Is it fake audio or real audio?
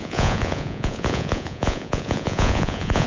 fake